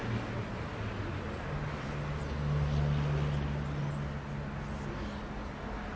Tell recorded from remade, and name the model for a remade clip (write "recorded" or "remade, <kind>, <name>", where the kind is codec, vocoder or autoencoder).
recorded